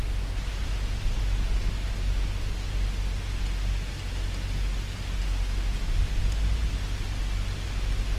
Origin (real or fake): real